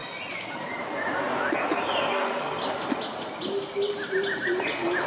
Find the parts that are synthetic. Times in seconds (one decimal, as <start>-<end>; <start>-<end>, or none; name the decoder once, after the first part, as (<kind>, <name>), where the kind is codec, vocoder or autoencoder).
2.1-2.6 (codec, SNAC)